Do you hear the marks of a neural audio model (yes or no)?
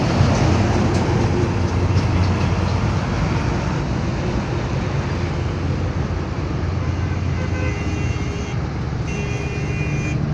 no